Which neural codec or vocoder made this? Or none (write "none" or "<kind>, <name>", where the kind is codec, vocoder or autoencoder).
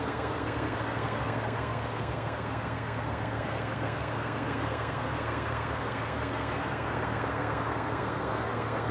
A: codec, SNAC